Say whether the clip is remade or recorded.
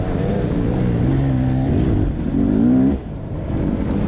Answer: recorded